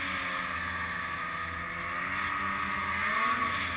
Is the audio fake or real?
real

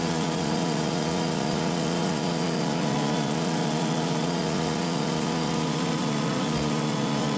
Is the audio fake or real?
fake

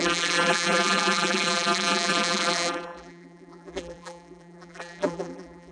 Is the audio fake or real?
fake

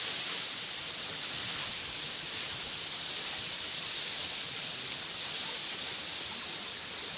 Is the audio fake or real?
real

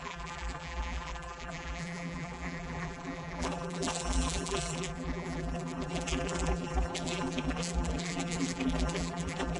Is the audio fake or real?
fake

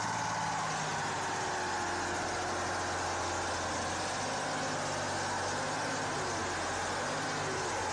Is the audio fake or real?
real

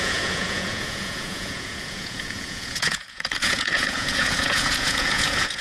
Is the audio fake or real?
fake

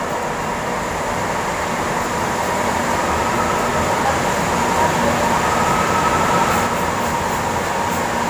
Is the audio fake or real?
real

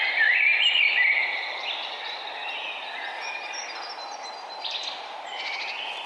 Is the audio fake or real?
real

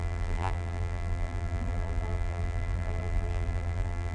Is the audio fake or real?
fake